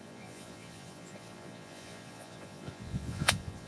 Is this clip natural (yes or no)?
no